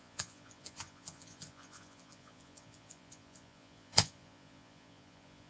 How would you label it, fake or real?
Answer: fake